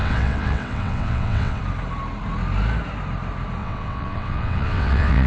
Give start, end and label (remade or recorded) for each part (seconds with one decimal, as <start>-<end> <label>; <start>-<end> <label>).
0.0-1.6 remade; 1.6-3.6 recorded; 3.6-5.3 remade